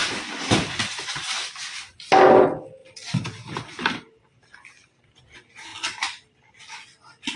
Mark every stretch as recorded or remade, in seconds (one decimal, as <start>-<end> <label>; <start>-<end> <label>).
0.0-2.8 recorded; 2.8-5.0 remade; 5.0-5.7 recorded; 5.7-6.7 remade; 6.7-7.4 recorded